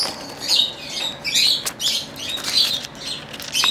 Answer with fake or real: real